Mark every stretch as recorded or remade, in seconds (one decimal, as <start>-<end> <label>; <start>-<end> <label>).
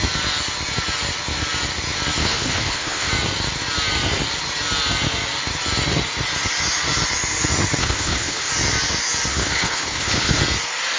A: 0.0-2.2 recorded; 2.2-3.1 remade; 3.1-7.8 recorded; 7.8-8.5 remade; 8.5-9.3 recorded; 9.3-10.4 remade; 10.4-11.0 recorded